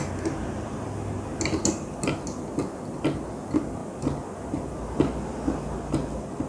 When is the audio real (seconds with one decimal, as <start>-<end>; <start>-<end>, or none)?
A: 0.0-6.5